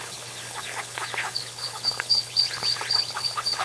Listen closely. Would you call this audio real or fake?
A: fake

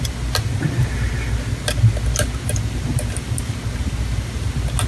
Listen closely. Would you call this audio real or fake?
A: real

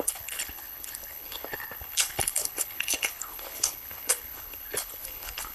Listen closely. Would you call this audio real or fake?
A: fake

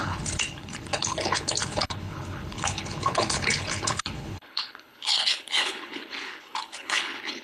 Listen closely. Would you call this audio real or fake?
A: fake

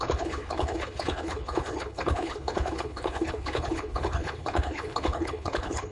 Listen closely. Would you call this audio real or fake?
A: fake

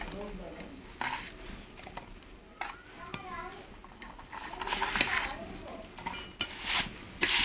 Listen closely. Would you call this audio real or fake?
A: real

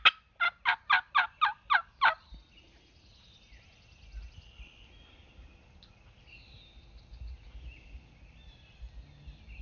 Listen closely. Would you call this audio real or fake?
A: real